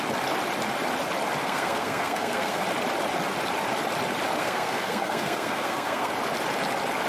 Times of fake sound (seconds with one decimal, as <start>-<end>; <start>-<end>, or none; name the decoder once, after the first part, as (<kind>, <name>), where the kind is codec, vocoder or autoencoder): 1.4-2.6 (codec, SNAC); 4.4-6.1